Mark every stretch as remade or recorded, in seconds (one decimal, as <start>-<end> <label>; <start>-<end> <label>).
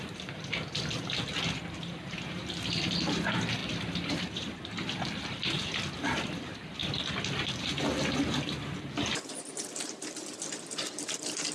0.0-3.6 remade; 3.6-5.2 recorded; 5.2-6.8 remade; 6.8-7.6 recorded; 7.6-11.5 remade